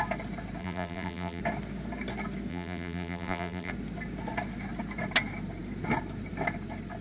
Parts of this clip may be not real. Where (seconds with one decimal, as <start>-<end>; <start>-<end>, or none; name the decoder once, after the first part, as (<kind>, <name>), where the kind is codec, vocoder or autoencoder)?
0.6-1.4 (vocoder, BigVGAN v2); 2.5-3.7